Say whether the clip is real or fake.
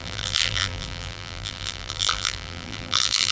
fake